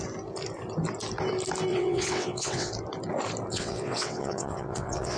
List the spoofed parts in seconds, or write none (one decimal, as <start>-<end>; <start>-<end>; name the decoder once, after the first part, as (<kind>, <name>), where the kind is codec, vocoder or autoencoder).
1.7-2.7 (vocoder, WaveNeXt); 3.5-5.2